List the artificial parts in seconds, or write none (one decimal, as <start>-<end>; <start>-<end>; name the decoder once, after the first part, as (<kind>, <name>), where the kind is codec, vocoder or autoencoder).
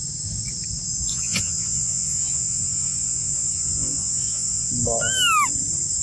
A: 1.1-4.7 (vocoder, Vocos)